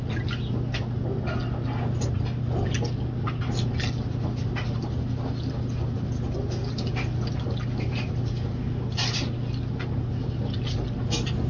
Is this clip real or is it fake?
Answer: real